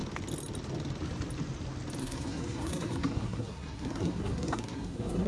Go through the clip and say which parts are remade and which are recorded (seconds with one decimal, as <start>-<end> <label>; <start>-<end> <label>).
0.0-2.0 recorded; 2.0-5.3 remade